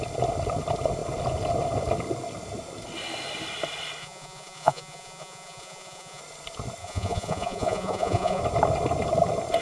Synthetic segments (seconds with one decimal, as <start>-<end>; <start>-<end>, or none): 4.0-6.2; 6.8-8.4